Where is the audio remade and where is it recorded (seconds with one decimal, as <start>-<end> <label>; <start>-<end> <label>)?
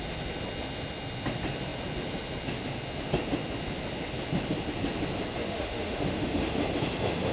0.0-5.4 recorded; 5.4-6.6 remade; 6.6-7.3 recorded